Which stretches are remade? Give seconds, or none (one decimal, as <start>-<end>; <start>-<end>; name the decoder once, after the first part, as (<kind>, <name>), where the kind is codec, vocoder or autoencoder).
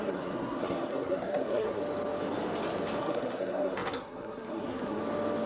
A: 0.0-1.8 (codec, SNAC); 3.0-5.0